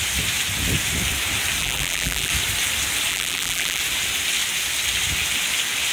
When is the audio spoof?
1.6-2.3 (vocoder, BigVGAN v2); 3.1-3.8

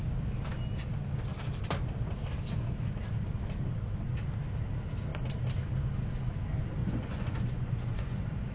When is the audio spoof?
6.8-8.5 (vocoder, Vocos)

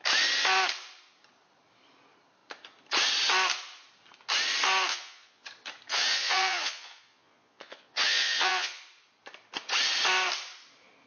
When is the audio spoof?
4.9-5.5 (vocoder, Vocos); 5.9-8.8